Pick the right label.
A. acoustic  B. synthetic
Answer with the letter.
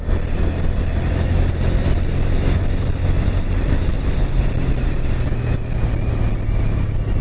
A